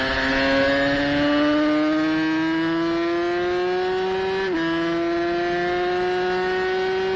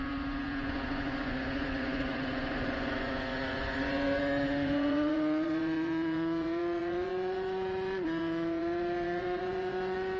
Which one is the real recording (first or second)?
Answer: first